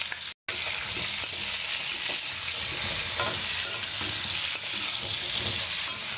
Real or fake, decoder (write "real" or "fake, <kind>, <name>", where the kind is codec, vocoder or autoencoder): real